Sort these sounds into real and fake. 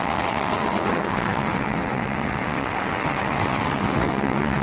fake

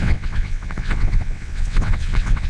fake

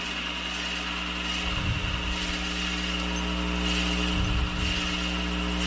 real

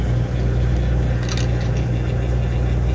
real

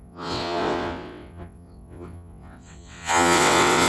fake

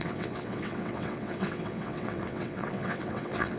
fake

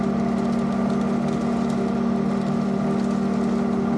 real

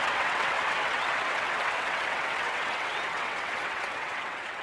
fake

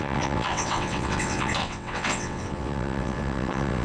fake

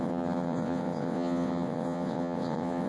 fake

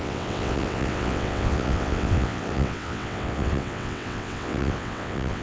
fake